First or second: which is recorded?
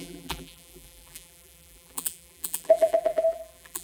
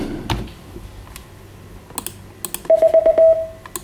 second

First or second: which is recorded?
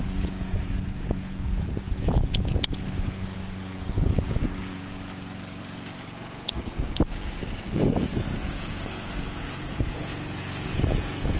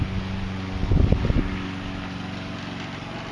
second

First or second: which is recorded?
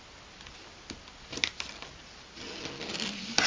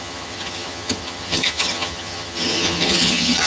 first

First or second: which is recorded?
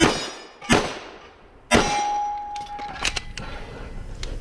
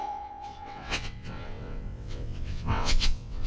first